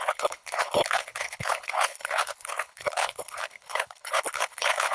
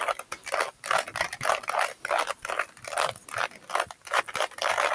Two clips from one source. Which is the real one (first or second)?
second